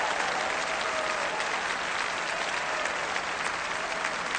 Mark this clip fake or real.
real